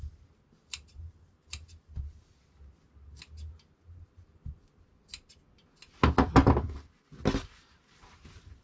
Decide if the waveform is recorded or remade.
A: recorded